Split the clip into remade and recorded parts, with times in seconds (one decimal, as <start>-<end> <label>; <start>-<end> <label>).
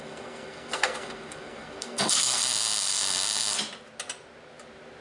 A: 0.0-2.4 remade; 2.4-5.0 recorded